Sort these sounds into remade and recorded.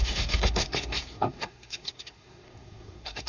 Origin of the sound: remade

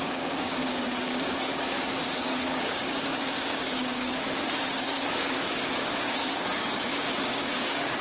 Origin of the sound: remade